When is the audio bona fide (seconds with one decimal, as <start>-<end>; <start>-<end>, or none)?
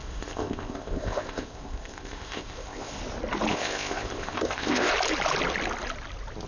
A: 3.0-3.5; 4.9-6.5